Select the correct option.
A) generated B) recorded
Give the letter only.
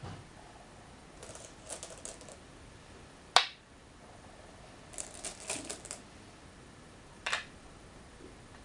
B